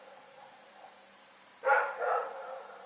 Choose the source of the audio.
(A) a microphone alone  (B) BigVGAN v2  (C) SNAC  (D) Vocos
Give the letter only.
B